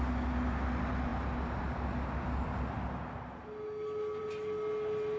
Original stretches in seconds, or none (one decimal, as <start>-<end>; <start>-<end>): 0.0-5.2